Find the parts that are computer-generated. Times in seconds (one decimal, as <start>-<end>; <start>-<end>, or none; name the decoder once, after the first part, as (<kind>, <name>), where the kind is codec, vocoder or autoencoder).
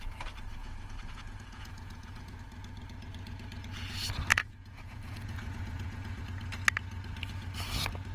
0.6-2.4 (vocoder, Vocos); 4.3-6.2